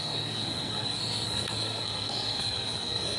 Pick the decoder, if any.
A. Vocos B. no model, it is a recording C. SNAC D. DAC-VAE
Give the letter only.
C